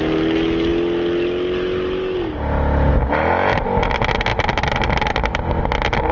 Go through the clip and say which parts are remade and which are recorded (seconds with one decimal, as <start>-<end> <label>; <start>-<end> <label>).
0.0-6.1 recorded